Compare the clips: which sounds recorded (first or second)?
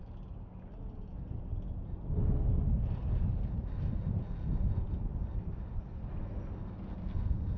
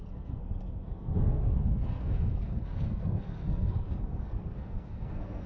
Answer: first